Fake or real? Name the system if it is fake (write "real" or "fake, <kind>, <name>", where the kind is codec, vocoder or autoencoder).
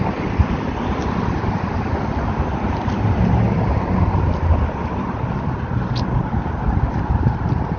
real